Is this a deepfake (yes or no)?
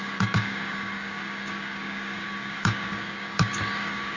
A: yes